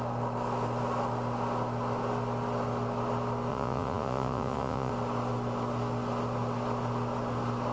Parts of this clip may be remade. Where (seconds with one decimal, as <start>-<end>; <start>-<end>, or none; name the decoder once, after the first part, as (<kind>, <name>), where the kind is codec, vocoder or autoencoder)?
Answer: 3.5-4.9 (vocoder, Vocos)